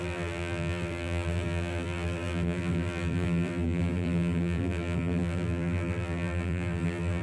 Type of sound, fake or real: fake